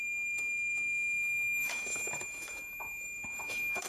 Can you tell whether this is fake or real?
fake